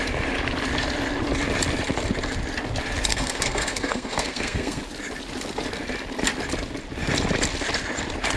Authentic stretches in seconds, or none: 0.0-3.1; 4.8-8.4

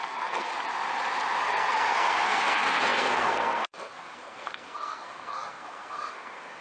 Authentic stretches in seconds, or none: 0.5-1.4

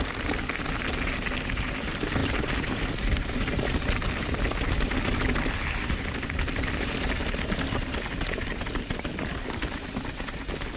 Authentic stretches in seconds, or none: 0.0-10.8